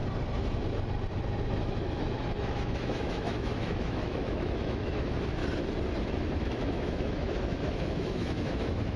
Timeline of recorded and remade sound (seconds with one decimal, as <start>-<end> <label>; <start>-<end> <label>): 0.0-1.6 recorded; 1.6-5.4 remade; 5.4-6.1 recorded; 6.1-9.0 remade